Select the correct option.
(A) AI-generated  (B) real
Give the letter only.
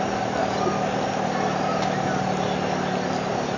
B